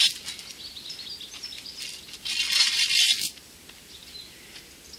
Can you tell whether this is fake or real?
real